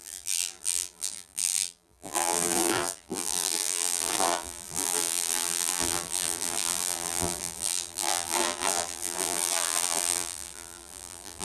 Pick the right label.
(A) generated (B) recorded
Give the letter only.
A